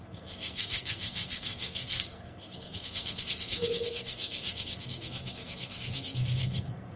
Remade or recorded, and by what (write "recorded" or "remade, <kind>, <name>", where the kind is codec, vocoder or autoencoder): remade, codec, SNAC